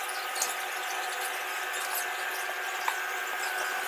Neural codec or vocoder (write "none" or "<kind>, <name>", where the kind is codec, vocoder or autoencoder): none